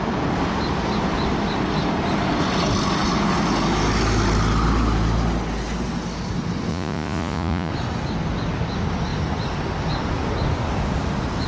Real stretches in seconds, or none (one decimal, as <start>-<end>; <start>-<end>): 0.0-6.7; 7.7-11.5

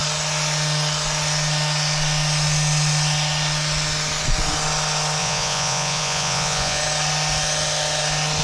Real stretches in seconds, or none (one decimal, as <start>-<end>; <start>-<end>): 0.0-5.2; 6.8-8.4

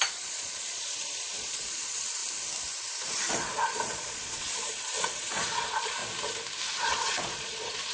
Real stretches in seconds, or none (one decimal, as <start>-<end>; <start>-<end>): 2.2-3.1; 6.0-6.8

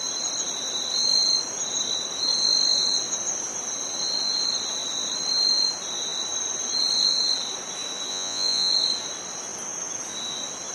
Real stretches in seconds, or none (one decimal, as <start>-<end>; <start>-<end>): 0.0-8.1; 8.7-10.7

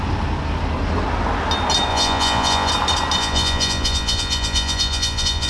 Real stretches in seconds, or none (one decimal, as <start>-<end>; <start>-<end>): 0.0-1.9; 2.7-3.2

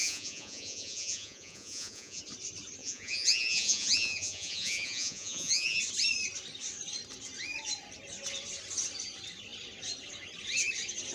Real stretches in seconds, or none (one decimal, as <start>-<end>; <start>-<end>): 2.2-2.8; 5.8-11.1

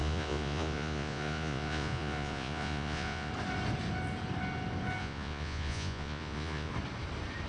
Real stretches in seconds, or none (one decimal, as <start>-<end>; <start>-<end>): 3.3-5.0; 6.7-7.5